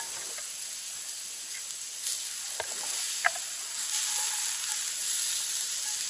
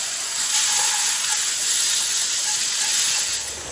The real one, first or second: first